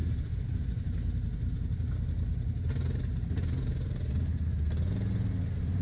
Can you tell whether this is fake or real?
real